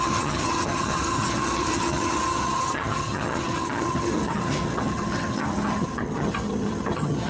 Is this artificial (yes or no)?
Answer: yes